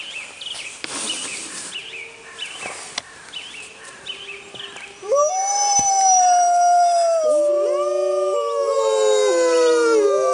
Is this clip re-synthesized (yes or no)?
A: no